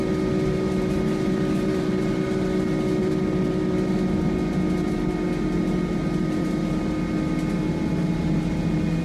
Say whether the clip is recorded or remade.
recorded